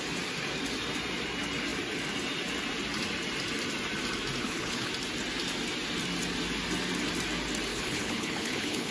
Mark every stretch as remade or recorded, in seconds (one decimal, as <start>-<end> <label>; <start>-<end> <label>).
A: 0.0-4.4 recorded; 4.4-4.9 remade; 4.9-7.7 recorded; 7.7-8.9 remade